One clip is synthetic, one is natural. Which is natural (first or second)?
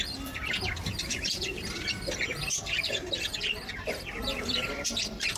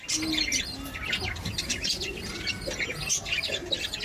second